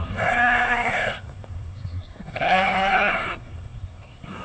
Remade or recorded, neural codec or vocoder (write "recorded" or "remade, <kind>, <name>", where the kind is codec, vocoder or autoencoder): remade, codec, SNAC